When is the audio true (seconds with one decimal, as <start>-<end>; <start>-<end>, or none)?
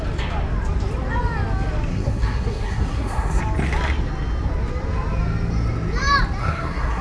0.0-1.9; 3.4-6.4